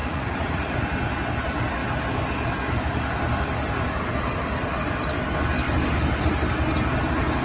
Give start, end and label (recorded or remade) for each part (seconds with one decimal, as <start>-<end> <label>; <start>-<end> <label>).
0.0-0.7 remade; 0.7-7.4 recorded